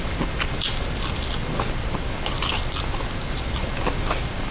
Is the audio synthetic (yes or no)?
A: no